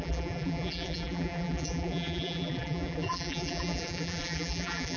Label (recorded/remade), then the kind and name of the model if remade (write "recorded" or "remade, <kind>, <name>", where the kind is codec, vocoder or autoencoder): remade, vocoder, BigVGAN v2